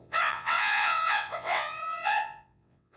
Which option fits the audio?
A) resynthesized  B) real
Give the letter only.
A